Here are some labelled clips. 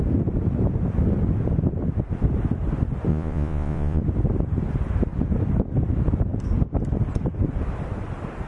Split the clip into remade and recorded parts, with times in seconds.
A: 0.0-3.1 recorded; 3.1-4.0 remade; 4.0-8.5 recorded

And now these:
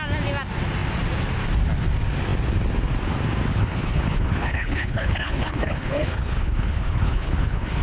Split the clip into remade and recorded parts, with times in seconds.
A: 0.0-3.5 recorded; 3.5-7.8 remade

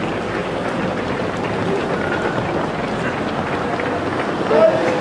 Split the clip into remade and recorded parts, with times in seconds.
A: 0.0-0.4 recorded; 0.4-1.2 remade; 1.2-5.0 recorded